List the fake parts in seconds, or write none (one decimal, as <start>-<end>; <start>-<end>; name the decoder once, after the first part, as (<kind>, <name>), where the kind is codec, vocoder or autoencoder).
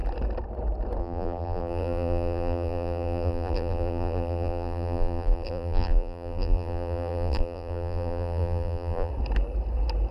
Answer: 1.0-9.1 (vocoder, BigVGAN v2)